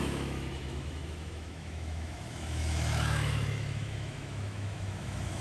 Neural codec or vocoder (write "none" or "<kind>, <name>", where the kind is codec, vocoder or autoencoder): autoencoder, DAC-VAE